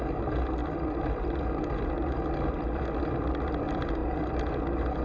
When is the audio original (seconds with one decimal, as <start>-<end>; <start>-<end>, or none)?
0.0-4.0; 4.6-5.0